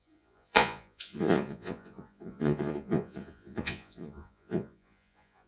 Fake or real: fake